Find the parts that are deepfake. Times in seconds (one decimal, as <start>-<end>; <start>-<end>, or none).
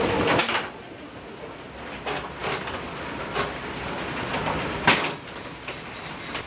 none